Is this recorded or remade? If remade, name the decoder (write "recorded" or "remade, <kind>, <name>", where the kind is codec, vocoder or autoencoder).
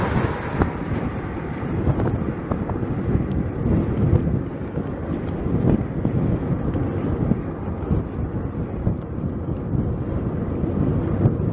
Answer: recorded